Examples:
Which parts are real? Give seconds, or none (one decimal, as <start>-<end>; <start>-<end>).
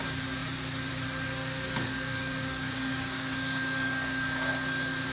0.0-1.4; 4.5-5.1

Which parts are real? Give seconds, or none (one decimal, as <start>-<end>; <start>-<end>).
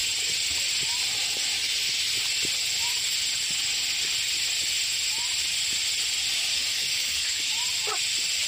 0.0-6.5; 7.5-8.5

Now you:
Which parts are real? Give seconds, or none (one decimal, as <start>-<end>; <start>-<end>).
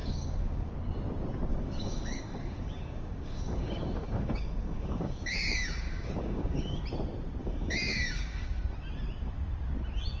0.7-1.5; 6.8-7.4; 8.6-10.2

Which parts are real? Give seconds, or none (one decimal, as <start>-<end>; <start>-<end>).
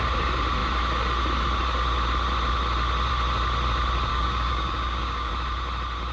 0.0-4.1; 5.3-6.1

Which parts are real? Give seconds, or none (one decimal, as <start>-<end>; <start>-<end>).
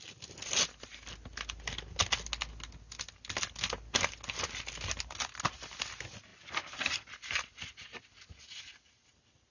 0.0-9.5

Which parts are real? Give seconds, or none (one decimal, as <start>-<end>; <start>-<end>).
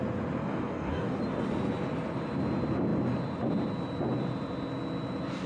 0.0-0.4; 1.2-5.5